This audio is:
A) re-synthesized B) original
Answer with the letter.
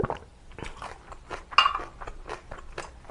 B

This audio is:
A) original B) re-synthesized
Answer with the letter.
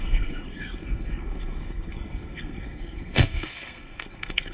B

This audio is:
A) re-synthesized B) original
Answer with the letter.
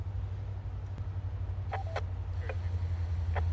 B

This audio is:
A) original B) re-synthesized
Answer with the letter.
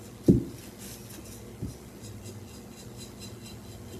A